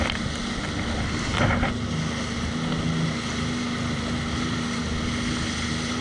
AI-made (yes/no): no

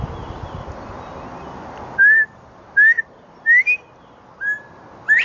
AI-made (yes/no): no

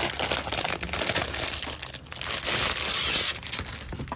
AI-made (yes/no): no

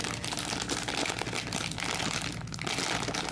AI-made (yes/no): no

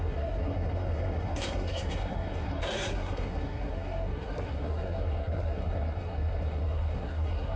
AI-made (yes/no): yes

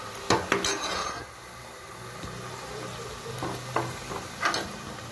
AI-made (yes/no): no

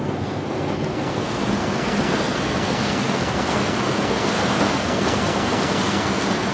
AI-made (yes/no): yes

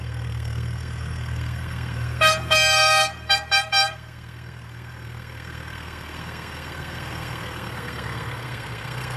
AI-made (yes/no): yes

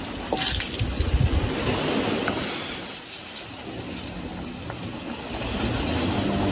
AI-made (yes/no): no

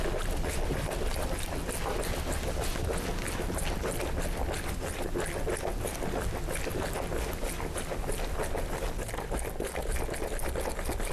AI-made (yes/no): no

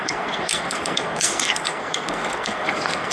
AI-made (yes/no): yes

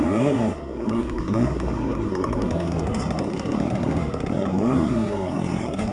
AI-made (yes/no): yes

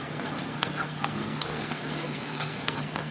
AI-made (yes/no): yes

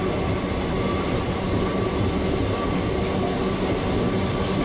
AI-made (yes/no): no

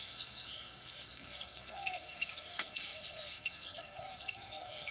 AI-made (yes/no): yes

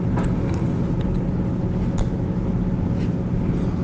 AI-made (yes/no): no